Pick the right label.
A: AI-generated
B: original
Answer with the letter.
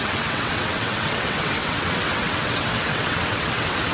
A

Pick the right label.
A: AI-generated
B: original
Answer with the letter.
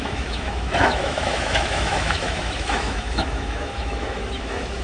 A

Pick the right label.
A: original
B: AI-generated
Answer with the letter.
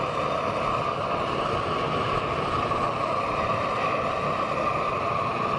A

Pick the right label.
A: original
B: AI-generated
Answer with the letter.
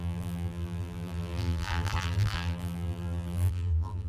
B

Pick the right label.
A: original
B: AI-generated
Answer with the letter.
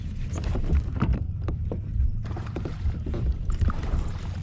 B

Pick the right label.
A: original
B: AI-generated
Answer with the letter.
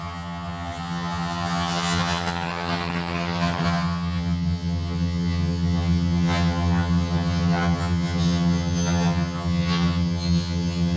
B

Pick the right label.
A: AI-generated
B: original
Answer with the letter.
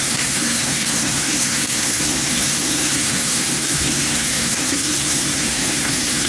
A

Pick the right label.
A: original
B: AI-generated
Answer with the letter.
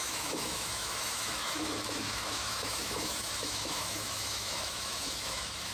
B